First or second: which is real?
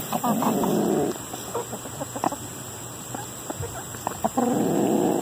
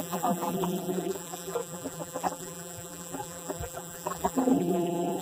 first